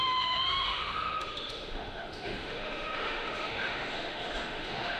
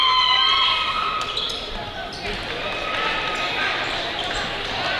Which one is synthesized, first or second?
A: first